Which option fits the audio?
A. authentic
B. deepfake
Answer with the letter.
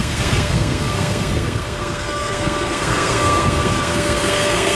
B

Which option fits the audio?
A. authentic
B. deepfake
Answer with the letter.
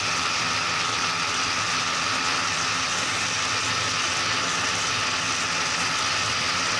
A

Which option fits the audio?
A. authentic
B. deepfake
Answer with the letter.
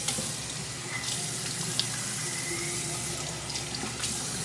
A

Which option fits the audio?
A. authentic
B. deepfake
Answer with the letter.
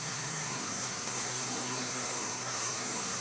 B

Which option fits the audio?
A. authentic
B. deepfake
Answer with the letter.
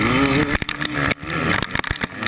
A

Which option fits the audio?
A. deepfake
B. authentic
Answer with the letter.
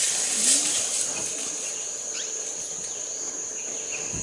B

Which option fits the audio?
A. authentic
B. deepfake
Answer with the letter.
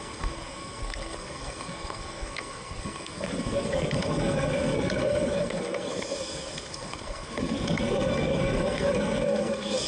B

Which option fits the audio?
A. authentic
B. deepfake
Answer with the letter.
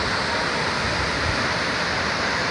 A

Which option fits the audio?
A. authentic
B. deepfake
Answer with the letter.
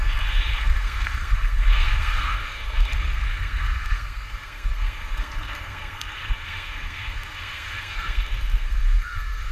B